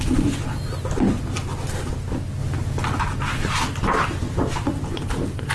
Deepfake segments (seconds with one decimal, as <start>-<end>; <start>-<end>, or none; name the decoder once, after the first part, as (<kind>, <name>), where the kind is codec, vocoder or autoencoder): none